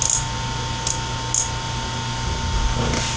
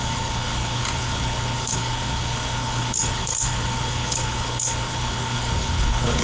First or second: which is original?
first